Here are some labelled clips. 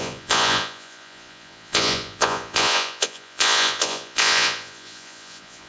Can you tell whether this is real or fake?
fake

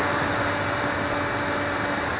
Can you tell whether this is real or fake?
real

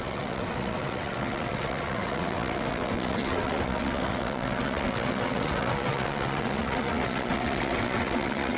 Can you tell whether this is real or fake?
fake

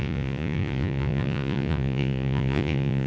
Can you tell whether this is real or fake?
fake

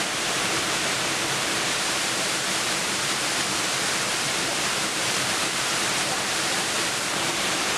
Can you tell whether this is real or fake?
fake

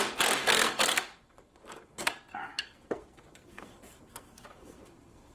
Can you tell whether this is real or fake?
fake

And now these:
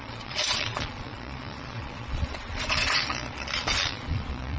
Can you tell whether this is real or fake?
fake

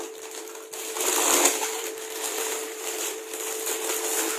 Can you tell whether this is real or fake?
fake